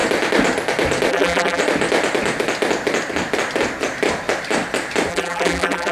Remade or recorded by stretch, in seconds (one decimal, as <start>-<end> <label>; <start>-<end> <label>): 0.0-1.1 recorded; 1.1-1.6 remade; 1.6-5.1 recorded; 5.1-5.9 remade